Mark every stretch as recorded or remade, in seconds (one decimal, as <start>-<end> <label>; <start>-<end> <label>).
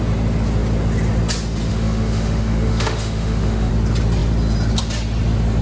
0.0-1.7 recorded; 1.7-3.7 remade; 3.7-5.6 recorded